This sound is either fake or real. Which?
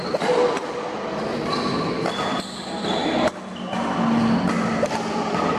real